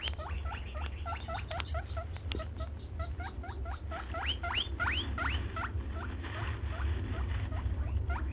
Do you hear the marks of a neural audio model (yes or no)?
no